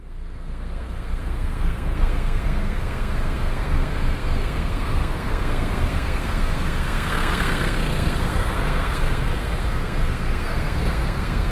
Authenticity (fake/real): fake